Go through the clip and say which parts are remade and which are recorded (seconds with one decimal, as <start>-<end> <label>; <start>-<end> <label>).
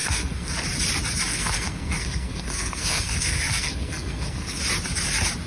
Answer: 0.0-0.5 remade; 0.5-1.3 recorded; 1.3-4.6 remade; 4.6-5.5 recorded